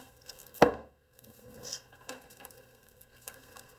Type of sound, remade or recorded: remade